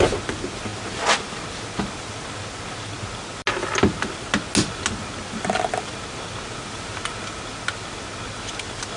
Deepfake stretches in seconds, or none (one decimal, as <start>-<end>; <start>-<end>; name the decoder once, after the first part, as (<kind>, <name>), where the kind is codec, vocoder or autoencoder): none